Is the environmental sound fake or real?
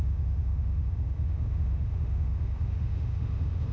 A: fake